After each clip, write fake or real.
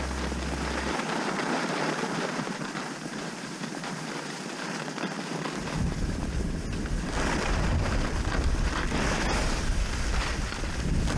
real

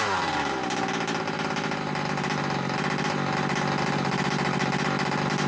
real